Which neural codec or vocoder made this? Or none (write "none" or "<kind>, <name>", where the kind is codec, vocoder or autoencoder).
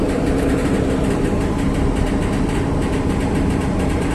vocoder, BigVGAN v2